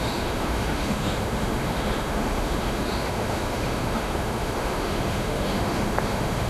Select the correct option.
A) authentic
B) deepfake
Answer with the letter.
B